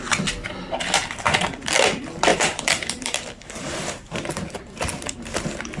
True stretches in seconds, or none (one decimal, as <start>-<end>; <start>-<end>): 0.0-2.3